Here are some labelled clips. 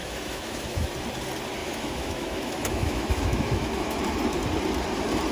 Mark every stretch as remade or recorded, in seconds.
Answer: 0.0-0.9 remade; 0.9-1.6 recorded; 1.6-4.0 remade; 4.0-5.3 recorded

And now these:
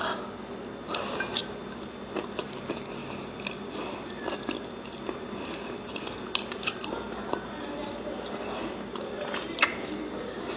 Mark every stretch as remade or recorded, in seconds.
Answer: 0.0-10.6 recorded